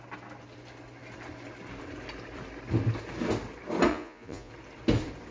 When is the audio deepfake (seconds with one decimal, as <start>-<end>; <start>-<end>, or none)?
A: 3.9-4.5